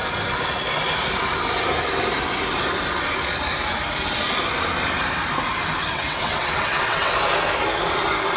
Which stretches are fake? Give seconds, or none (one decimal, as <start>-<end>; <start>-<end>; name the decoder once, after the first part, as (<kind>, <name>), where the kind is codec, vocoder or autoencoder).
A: 5.9-7.1 (vocoder, WaveNeXt)